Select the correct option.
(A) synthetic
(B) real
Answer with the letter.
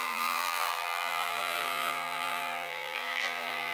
A